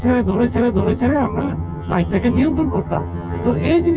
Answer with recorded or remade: remade